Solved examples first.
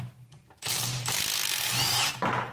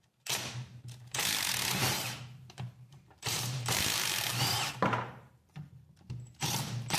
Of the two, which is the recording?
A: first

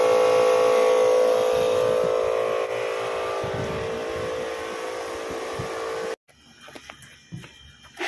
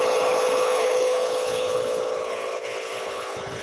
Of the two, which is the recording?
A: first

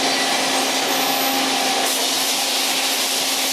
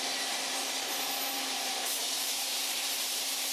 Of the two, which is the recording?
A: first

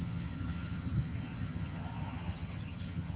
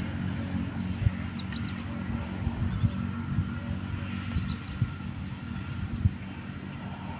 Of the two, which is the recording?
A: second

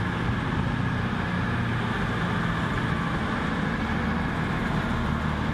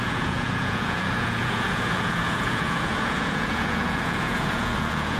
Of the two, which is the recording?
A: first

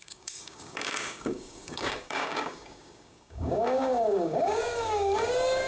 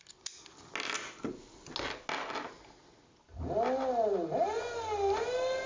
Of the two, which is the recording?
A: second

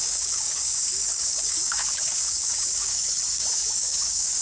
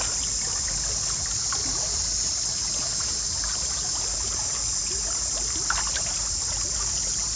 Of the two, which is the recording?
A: second